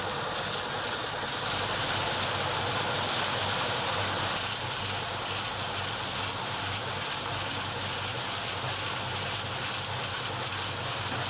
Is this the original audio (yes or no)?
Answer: yes